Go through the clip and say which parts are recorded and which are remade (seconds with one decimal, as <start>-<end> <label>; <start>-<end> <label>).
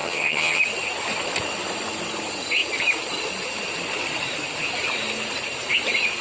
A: 0.0-0.6 remade; 0.6-6.2 recorded